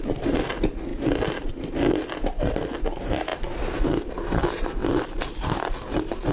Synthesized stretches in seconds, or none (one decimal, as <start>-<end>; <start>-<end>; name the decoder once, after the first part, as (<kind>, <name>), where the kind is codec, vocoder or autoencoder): none